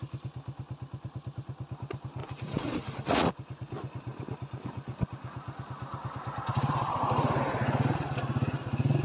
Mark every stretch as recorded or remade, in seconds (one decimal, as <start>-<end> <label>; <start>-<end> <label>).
0.0-2.2 recorded; 2.2-3.3 remade; 3.3-9.0 recorded